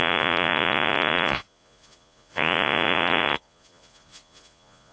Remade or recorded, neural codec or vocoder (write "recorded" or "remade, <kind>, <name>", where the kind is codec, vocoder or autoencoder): remade, vocoder, Vocos